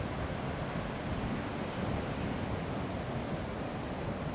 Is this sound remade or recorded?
recorded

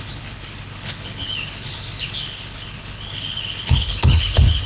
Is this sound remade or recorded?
remade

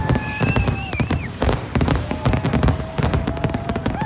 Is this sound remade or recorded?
remade